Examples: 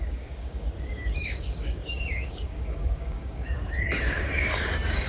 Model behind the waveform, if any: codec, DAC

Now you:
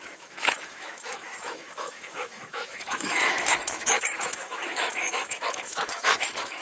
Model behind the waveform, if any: autoencoder, DAC-VAE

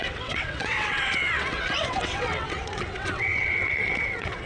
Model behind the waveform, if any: vocoder, WaveNeXt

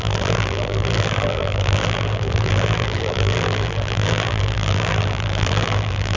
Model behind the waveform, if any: vocoder, BigVGAN v2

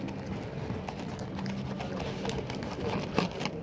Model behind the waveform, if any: none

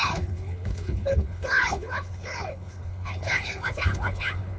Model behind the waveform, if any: codec, HILCodec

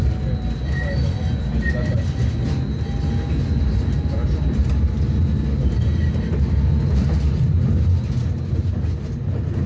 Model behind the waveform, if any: none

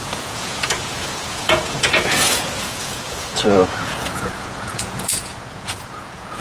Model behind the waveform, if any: vocoder, Vocos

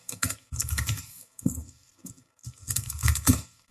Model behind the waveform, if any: codec, SNAC